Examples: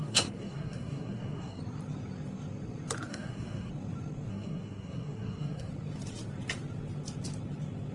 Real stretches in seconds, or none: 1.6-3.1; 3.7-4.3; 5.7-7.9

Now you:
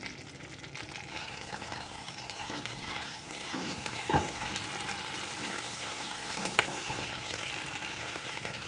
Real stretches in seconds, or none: 0.0-1.1; 4.5-5.4; 7.5-7.9